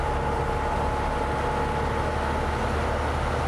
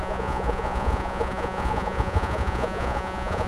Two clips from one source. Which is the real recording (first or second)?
first